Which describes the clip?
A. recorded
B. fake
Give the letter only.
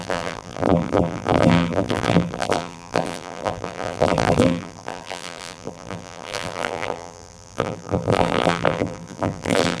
B